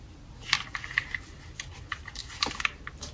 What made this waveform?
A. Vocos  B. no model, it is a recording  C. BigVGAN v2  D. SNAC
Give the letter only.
B